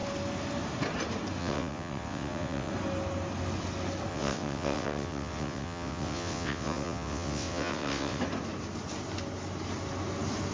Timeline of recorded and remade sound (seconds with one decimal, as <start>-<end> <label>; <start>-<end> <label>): 0.0-1.4 recorded; 1.4-2.7 remade; 2.7-4.1 recorded; 4.1-8.2 remade; 8.2-10.5 recorded